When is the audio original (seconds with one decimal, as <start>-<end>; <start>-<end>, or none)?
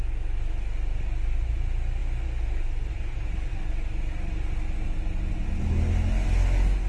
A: 0.0-6.9